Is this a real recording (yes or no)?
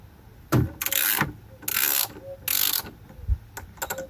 yes